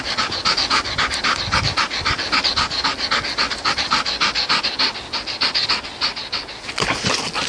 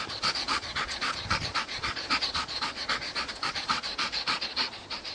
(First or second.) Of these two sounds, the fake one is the second